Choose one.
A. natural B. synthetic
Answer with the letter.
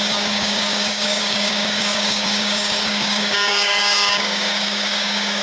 B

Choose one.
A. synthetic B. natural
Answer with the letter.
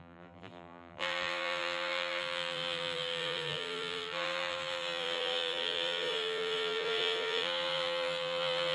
A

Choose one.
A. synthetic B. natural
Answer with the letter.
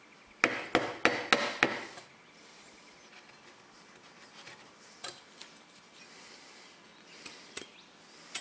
B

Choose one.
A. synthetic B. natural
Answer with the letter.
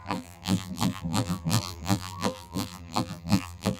A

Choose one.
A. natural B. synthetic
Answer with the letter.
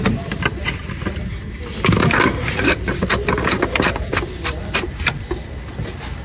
A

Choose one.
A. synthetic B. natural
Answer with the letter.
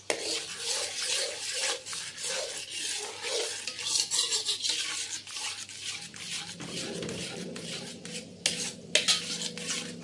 B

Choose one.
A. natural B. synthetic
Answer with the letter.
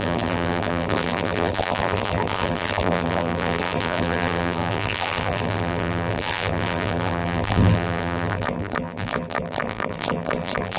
B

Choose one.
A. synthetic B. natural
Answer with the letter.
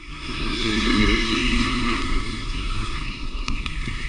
A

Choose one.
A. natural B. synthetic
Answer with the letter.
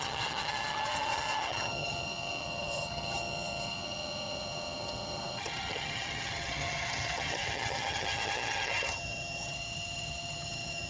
B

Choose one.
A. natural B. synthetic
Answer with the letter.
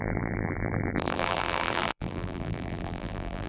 B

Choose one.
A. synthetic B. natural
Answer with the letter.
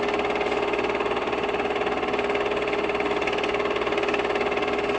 B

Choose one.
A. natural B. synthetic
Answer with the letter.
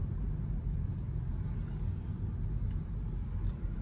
A